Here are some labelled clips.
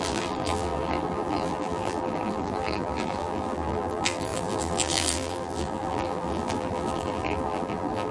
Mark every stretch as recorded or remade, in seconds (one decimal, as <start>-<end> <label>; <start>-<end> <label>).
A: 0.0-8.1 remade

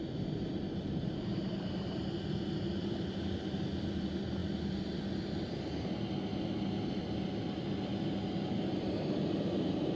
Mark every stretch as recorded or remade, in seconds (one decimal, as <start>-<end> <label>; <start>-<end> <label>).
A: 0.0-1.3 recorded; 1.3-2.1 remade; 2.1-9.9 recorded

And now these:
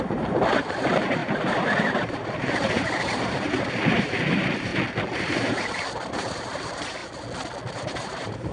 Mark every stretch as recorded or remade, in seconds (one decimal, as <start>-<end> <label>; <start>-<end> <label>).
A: 0.0-4.7 remade; 4.7-5.2 recorded; 5.2-7.0 remade; 7.0-7.7 recorded; 7.7-8.5 remade

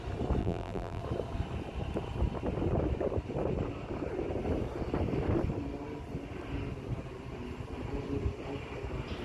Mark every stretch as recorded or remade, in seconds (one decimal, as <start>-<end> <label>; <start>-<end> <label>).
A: 0.0-0.4 recorded; 0.4-1.0 remade; 1.0-9.2 recorded

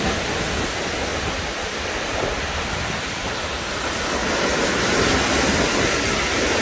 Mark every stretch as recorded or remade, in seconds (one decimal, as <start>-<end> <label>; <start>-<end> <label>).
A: 0.0-1.1 remade; 1.1-2.5 recorded; 2.5-4.2 remade; 4.2-6.1 recorded; 6.1-6.6 remade

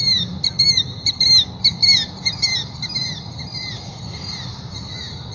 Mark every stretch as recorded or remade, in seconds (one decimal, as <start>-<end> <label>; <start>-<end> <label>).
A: 0.0-4.5 recorded; 4.5-5.3 remade